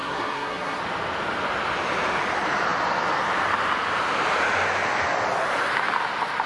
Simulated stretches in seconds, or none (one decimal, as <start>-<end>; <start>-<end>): 0.0-0.8